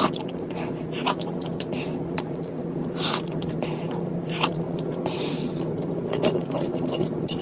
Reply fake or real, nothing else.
fake